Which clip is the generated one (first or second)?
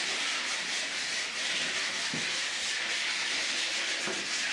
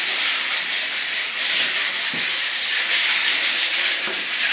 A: second